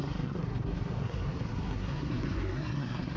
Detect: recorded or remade remade